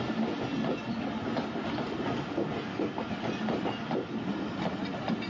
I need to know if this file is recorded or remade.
recorded